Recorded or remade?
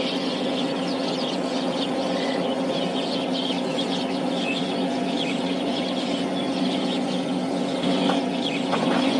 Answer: remade